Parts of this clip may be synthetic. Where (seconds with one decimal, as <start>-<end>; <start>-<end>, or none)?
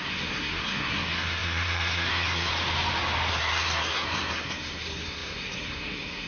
0.0-2.5; 3.3-6.3